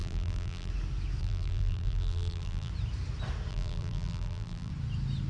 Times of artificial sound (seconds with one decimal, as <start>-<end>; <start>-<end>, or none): 0.0-0.7; 1.2-2.7; 3.5-4.7